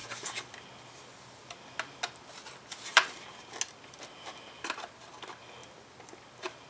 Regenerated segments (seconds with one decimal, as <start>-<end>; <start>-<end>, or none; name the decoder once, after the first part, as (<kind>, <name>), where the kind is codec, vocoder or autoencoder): none